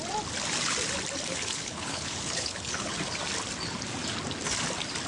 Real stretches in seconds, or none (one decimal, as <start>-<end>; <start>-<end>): 0.0-1.3; 2.9-5.1